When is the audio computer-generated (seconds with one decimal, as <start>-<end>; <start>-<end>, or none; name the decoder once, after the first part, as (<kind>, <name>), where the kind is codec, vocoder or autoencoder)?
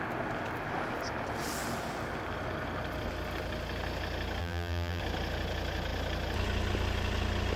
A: 4.4-5.0 (vocoder, BigVGAN v2)